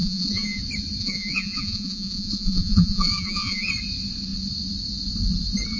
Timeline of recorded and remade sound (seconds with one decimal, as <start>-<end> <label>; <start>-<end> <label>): 0.0-0.6 remade; 0.6-1.0 recorded; 1.0-3.7 remade; 3.7-5.8 recorded